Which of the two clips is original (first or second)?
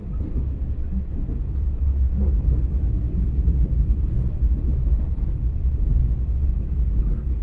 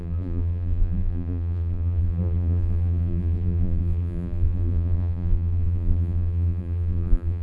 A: first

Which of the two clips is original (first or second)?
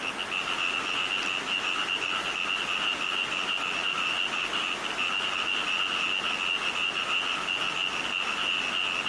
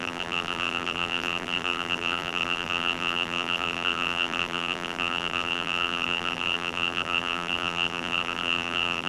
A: first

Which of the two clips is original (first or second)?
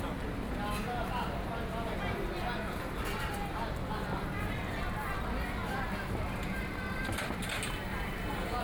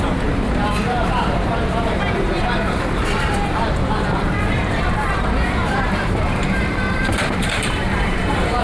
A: first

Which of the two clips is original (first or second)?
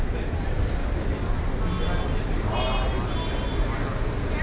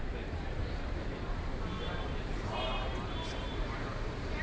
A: first